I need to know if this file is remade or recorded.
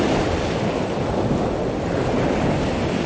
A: recorded